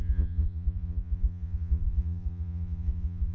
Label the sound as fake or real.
fake